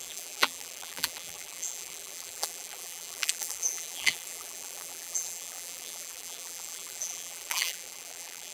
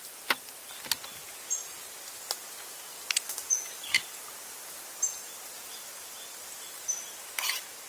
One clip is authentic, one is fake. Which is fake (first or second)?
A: first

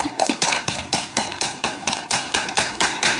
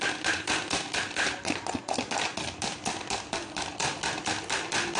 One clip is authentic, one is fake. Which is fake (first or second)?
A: first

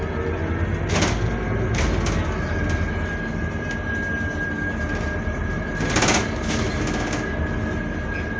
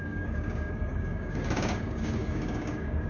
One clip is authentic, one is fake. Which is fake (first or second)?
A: second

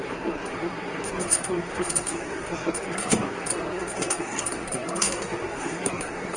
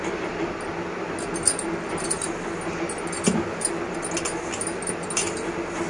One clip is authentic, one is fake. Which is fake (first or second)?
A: first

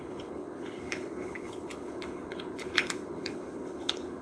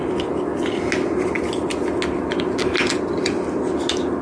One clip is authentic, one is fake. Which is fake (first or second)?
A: first